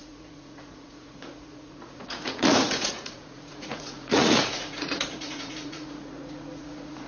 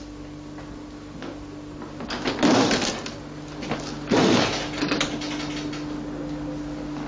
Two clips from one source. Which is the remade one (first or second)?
first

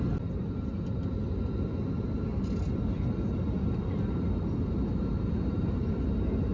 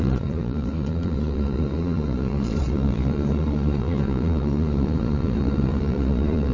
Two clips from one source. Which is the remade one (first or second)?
second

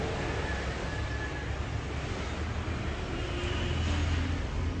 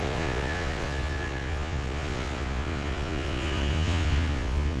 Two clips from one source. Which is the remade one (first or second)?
second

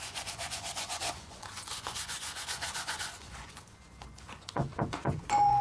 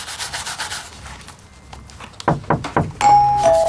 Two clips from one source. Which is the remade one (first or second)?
first